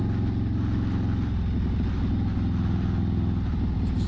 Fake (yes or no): no